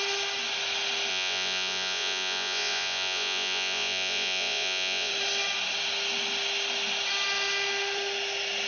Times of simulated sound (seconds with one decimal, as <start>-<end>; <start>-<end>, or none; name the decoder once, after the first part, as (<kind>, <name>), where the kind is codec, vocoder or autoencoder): 1.1-5.1 (vocoder, Vocos)